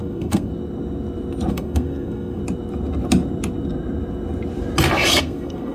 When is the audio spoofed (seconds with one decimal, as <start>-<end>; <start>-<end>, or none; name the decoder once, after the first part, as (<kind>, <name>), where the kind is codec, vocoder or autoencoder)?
0.0-0.5 (codec, SNAC); 1.5-2.4; 5.2-5.7